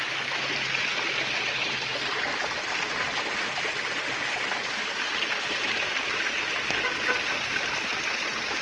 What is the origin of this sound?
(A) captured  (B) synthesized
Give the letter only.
A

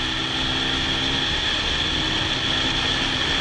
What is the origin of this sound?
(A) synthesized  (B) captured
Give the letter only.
B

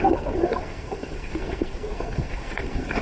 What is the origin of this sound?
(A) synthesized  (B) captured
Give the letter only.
A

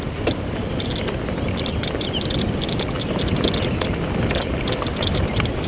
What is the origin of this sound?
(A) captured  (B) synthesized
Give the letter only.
B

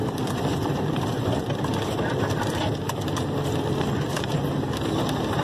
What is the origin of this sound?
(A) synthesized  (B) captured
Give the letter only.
A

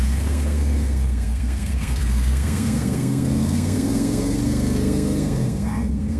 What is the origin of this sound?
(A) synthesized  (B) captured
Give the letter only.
A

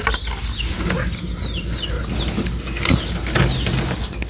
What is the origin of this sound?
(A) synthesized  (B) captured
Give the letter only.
B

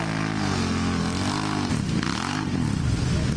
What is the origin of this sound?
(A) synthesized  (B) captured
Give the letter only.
B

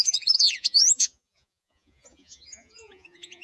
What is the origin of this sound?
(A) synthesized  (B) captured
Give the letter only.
A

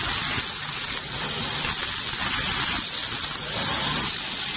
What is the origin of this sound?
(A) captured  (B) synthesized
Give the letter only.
A